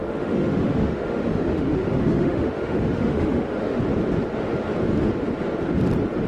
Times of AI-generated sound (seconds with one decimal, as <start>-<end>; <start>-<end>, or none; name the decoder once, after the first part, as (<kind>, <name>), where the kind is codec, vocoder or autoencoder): 0.0-3.8 (autoencoder, DAC-VAE)